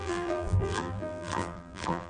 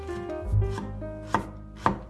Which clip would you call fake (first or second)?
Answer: first